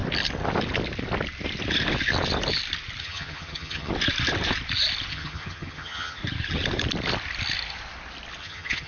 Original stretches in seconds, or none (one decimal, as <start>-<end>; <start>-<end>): 0.0-3.0; 3.9-5.1; 6.2-8.4